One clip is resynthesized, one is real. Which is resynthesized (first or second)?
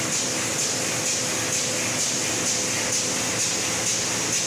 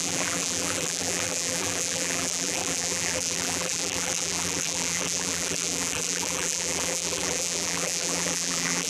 second